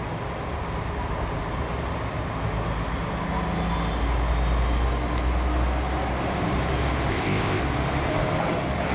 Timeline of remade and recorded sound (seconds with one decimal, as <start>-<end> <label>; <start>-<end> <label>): 0.0-7.1 recorded; 7.1-7.6 remade; 7.6-8.9 recorded